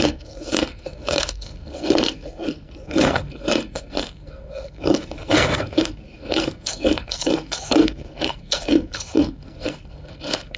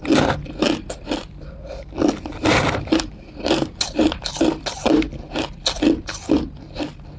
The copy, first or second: first